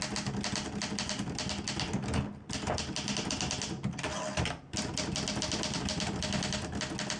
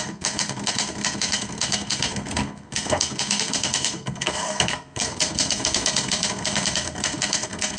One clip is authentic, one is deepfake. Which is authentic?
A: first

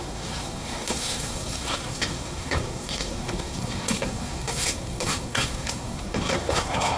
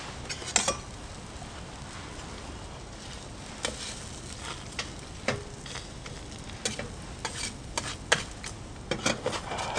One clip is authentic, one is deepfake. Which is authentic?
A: second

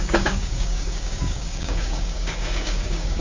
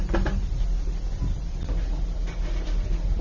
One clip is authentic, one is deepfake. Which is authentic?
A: second